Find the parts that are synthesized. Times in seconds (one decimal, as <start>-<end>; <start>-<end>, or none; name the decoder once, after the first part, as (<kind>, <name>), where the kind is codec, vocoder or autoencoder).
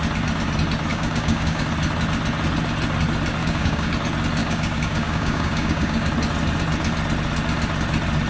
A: 0.9-1.6 (codec, DAC); 3.4-3.9; 4.4-6.1